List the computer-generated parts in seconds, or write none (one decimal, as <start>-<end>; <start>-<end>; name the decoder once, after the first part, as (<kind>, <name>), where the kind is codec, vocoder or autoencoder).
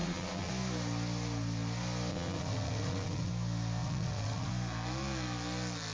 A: 0.0-0.5 (vocoder, WaveNeXt); 2.1-3.3; 3.8-4.5